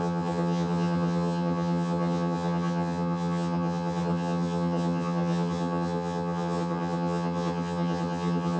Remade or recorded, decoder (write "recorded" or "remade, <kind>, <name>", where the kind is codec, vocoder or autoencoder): remade, vocoder, HiFi-GAN